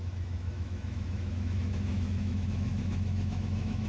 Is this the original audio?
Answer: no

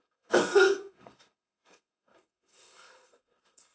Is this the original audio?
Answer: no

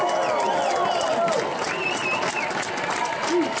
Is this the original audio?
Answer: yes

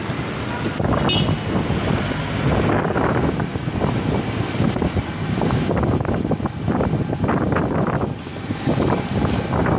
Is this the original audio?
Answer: yes